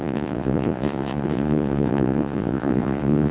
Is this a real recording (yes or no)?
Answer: no